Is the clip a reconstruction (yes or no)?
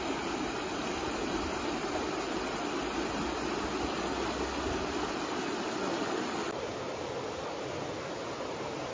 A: no